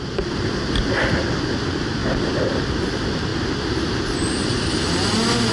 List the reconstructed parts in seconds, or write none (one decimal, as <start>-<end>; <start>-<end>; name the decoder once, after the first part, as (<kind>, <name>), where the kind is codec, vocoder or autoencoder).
none